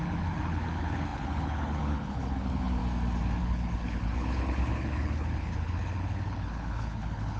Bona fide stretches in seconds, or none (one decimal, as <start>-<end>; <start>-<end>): 2.8-3.4